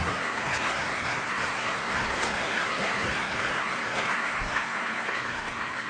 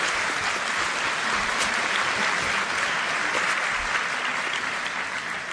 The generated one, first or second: first